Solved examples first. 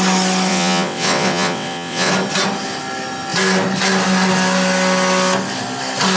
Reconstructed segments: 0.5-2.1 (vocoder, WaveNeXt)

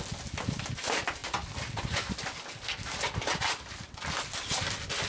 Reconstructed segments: none

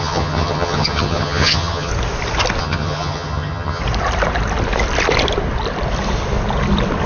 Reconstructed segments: 0.0-1.9 (vocoder, HiFi-GAN); 2.6-3.8

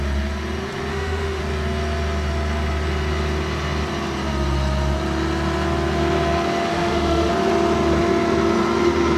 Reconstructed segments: 0.9-1.4 (autoencoder, DAC-VAE); 6.7-7.3

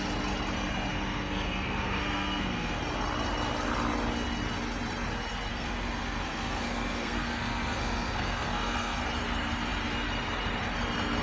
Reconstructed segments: 0.9-2.8 (codec, SNAC); 5.5-9.0

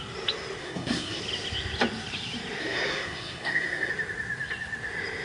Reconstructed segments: 0.6-1.2 (codec, SNAC); 2.6-3.9

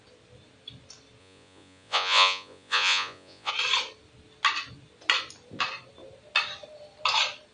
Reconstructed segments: 1.2-3.5 (vocoder, Vocos)

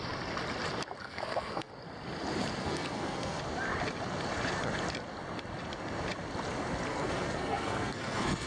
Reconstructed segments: 1.0-1.7 (codec, SNAC); 2.6-3.4; 6.9-8.5